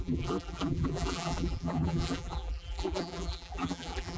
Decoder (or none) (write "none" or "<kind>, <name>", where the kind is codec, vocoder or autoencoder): vocoder, BigVGAN v2